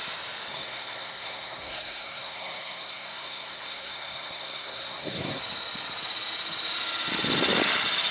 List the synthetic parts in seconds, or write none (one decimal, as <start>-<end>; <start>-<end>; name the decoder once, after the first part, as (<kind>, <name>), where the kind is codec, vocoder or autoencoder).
0.5-5.4 (codec, SNAC)